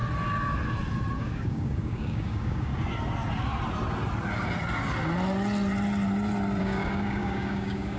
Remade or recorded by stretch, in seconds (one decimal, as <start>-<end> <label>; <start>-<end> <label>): 0.0-1.2 recorded; 1.2-2.7 remade; 2.7-6.6 recorded; 6.6-8.0 remade

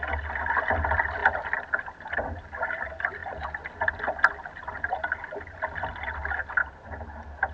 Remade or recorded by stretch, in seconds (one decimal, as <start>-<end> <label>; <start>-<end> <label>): 0.0-7.5 recorded

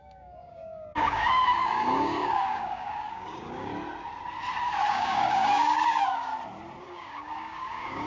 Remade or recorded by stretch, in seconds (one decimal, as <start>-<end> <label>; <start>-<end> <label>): 0.0-3.7 remade; 3.7-4.9 recorded; 4.9-6.3 remade; 6.3-6.8 recorded; 6.8-8.1 remade

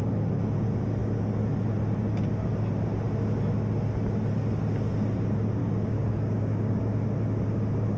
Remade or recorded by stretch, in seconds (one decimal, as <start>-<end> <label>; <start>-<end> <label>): 0.0-5.6 recorded; 5.6-6.8 remade; 6.8-8.0 recorded

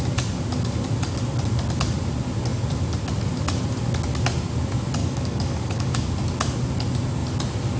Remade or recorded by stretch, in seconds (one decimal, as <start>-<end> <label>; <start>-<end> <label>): 0.0-5.0 recorded; 5.0-6.1 remade; 6.1-7.8 recorded

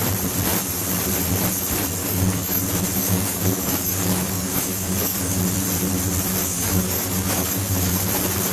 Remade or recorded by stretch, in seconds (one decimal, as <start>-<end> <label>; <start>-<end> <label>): 0.0-2.0 recorded; 2.0-2.6 remade; 2.6-3.0 recorded; 3.0-5.4 remade; 5.4-6.4 recorded; 6.4-8.0 remade; 8.0-8.5 recorded